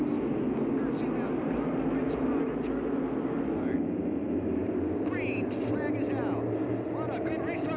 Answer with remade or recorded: recorded